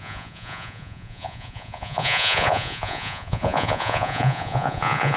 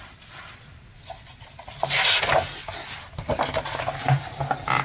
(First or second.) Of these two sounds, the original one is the second